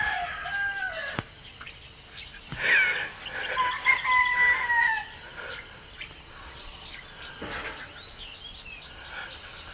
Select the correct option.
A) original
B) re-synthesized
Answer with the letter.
A